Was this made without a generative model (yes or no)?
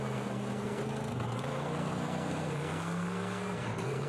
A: no